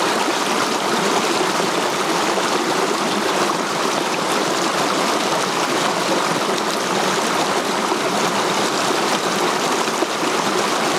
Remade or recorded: remade